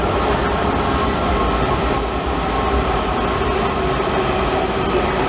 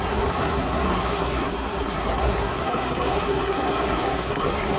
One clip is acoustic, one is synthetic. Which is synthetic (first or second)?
second